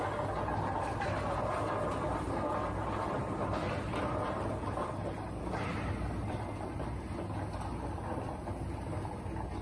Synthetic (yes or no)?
no